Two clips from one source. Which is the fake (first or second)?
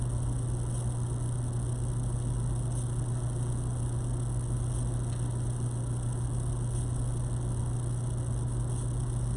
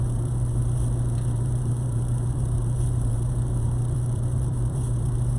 second